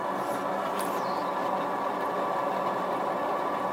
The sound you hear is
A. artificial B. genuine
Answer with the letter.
B